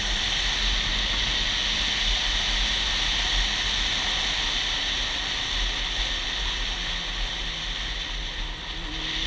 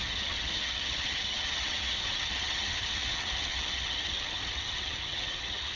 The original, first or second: first